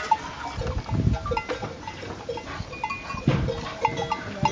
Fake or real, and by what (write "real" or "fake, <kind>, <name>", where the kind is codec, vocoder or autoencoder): real